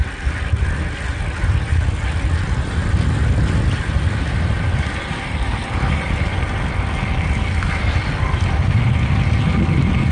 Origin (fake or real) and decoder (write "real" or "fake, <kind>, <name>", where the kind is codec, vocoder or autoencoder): real